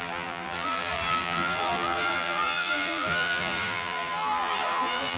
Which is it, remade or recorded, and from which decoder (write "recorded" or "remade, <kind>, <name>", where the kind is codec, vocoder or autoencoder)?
remade, vocoder, BigVGAN v2